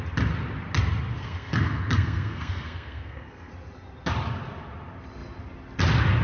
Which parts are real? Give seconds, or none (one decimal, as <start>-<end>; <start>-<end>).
0.0-1.1; 3.5-6.2